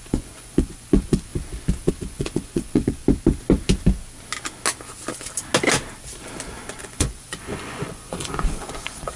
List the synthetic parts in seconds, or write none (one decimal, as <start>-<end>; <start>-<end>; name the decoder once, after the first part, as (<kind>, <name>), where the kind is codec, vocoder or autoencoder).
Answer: 0.0-1.3 (vocoder, Vocos); 1.9-3.0; 6.8-9.2